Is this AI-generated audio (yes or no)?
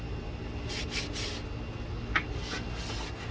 no